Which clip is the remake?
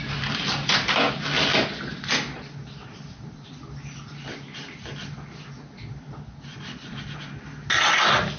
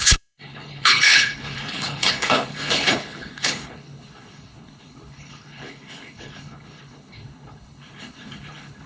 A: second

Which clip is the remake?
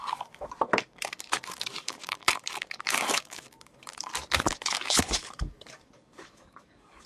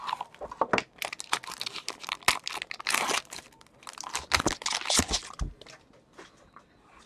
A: first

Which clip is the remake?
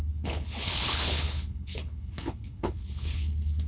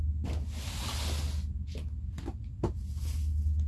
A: first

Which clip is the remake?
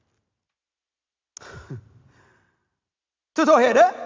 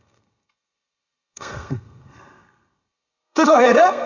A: second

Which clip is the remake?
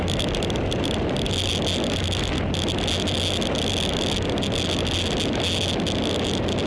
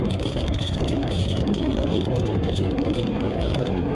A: second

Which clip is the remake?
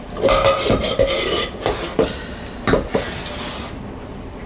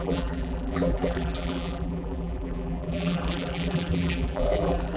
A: second